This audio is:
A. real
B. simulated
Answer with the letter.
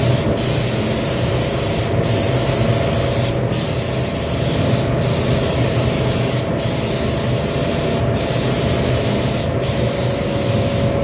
A